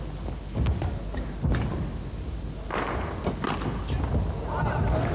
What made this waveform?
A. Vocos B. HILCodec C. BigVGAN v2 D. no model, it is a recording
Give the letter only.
D